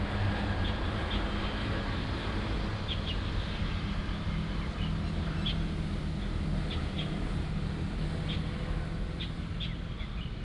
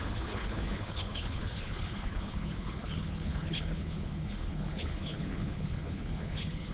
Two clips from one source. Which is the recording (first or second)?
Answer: first